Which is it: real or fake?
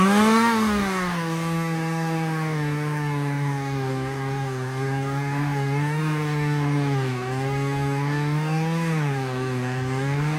fake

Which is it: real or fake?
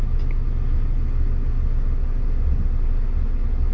real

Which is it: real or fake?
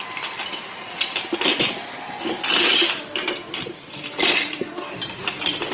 real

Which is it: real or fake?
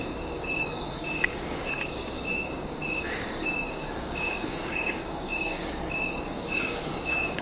fake